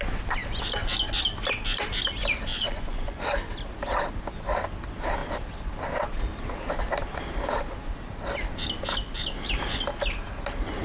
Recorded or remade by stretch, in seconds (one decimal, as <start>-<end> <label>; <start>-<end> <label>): 0.0-2.5 recorded; 2.5-3.2 remade; 3.2-10.8 recorded